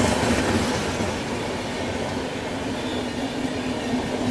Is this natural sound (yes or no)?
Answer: yes